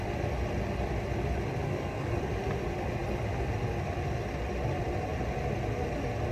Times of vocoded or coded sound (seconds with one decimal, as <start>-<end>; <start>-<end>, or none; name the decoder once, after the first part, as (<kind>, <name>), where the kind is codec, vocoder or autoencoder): 1.6-2.3 (codec, DAC)